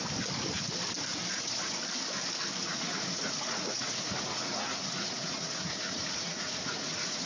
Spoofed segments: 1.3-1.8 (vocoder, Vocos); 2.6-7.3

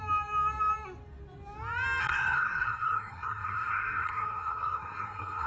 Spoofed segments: 2.0-5.5 (codec, SNAC)

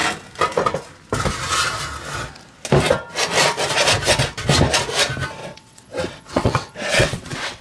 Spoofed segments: 5.4-7.6 (vocoder, WaveNeXt)

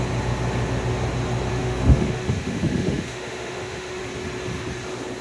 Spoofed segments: 1.5-4.0 (autoencoder, DAC-VAE)